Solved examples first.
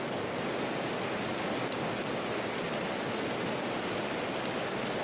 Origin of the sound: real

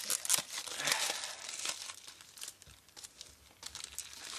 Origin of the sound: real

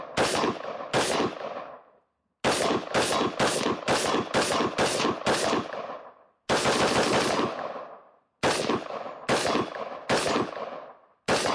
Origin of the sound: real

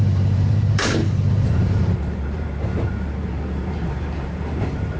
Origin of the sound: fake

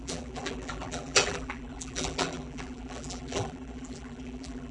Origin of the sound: fake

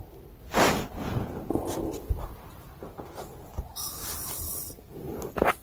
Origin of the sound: real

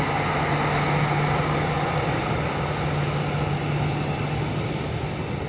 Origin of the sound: real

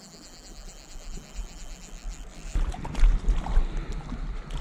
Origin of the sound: real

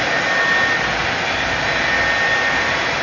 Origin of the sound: real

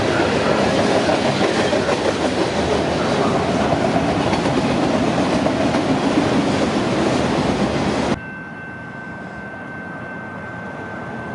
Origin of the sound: real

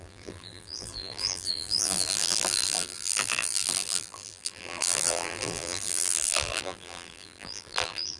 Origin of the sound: fake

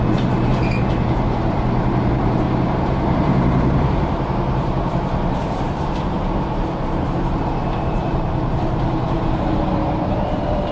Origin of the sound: fake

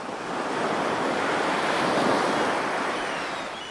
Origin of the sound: real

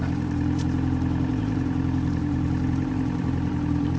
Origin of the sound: fake